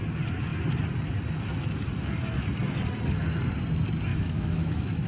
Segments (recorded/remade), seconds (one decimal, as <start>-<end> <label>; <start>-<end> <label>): 0.0-4.1 recorded; 4.1-5.1 remade